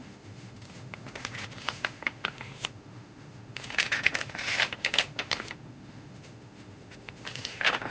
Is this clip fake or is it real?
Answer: fake